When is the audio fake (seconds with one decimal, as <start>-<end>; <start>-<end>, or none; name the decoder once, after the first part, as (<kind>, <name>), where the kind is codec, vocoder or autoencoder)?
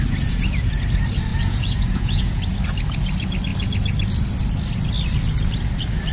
1.3-2.4 (vocoder, Vocos)